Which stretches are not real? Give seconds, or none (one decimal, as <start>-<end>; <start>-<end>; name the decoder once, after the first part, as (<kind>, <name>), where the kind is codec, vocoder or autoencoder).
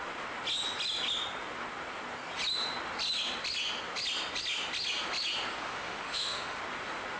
5.5-6.6 (autoencoder, DAC-VAE)